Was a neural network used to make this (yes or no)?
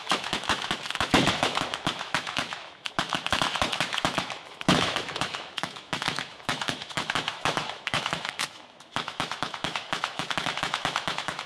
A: yes